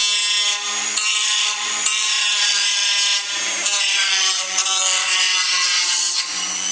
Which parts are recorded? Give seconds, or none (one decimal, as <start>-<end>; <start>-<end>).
0.0-0.8; 2.9-3.8